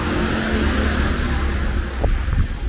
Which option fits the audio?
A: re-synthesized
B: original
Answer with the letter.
B